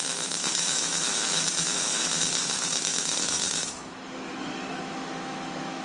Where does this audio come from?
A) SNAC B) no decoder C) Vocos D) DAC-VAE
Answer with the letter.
D